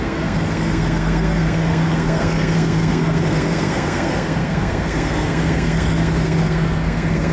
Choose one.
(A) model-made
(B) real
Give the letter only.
A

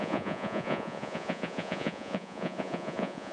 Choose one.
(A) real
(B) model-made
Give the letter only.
B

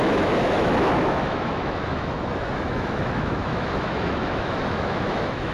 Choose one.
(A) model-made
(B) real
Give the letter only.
A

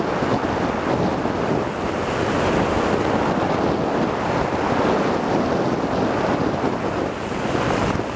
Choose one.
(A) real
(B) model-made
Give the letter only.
A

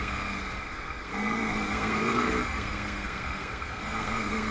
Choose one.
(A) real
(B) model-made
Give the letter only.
B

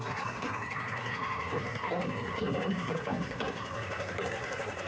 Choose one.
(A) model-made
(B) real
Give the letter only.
A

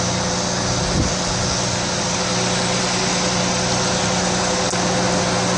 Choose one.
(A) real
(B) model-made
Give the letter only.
A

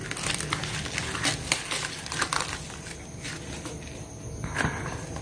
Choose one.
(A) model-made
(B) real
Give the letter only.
B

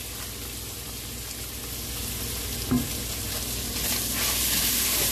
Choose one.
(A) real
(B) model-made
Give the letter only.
A